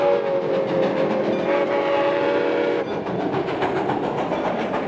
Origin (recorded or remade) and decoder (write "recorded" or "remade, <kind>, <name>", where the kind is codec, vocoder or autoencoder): recorded